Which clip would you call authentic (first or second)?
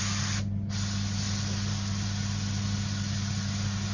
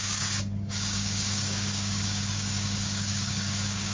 first